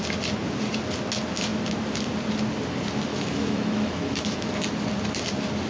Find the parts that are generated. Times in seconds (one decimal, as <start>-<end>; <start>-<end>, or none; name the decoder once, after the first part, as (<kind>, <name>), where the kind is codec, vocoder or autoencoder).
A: 3.1-4.5 (autoencoder, DAC-VAE)